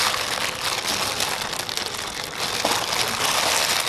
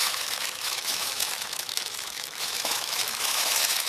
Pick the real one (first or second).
first